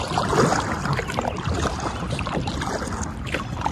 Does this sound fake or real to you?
real